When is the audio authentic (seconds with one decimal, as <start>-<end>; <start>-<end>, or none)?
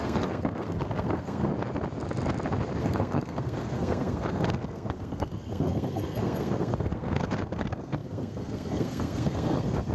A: 1.5-2.8